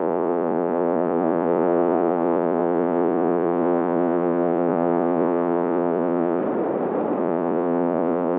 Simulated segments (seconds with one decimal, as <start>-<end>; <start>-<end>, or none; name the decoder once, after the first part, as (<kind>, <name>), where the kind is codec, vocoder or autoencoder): 0.0-6.4 (vocoder, Vocos); 7.2-8.4

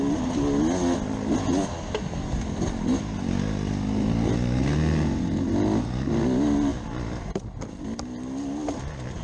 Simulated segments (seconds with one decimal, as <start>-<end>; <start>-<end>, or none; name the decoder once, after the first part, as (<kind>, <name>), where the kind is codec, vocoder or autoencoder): none